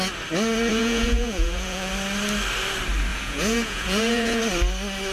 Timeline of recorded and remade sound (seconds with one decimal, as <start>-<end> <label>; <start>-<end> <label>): 0.0-0.7 recorded; 0.7-1.9 remade; 1.9-3.1 recorded; 3.1-4.4 remade; 4.4-5.1 recorded